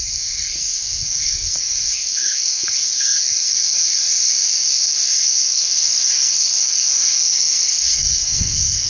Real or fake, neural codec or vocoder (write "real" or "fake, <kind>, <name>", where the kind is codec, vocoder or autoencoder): fake, codec, SNAC